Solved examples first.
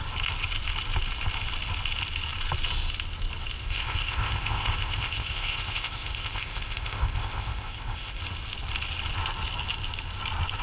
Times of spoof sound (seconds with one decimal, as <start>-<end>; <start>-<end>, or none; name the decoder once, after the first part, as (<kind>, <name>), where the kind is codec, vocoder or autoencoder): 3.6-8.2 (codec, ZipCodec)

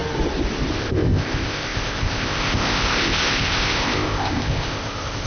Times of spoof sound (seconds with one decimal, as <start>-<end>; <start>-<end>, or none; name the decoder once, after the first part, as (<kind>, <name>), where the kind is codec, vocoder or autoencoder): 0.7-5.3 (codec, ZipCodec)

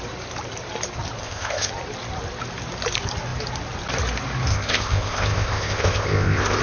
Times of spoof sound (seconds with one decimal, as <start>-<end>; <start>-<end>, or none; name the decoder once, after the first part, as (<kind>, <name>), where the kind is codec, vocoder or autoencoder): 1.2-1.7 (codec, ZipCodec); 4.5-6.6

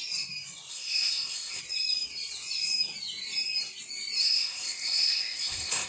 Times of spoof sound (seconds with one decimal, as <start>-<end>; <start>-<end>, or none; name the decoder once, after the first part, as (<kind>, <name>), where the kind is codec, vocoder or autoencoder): 0.7-1.6 (codec, ZipCodec); 4.2-5.9